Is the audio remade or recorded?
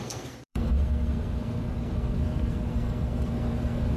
remade